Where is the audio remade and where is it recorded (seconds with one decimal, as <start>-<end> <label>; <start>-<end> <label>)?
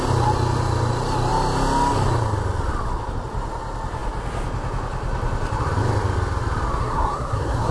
0.0-6.8 recorded; 6.8-7.7 remade